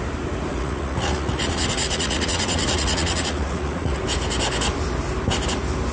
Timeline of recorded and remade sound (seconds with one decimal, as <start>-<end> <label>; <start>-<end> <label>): 0.0-0.5 recorded; 0.5-4.0 remade; 4.0-5.9 recorded

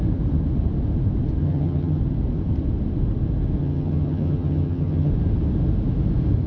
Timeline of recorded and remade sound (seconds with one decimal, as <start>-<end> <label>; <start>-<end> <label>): 0.0-1.4 recorded; 1.4-2.0 remade; 2.0-3.6 recorded; 3.6-5.1 remade; 5.1-6.5 recorded

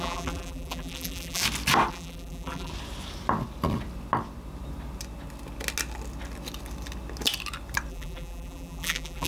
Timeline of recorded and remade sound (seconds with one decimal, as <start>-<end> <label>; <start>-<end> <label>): 0.0-1.4 remade; 1.4-1.9 recorded; 1.9-2.7 remade; 2.7-7.9 recorded; 7.9-9.3 remade

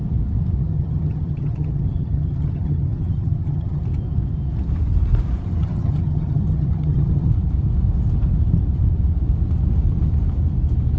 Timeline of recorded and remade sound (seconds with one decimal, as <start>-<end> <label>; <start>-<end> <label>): 0.0-0.6 recorded; 0.6-3.8 remade; 3.8-5.6 recorded; 5.6-7.3 remade; 7.3-11.0 recorded